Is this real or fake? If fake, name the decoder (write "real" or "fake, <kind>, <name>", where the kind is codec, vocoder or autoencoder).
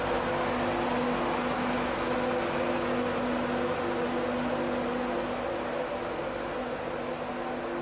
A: real